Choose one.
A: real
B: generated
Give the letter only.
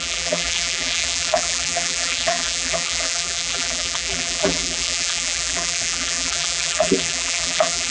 B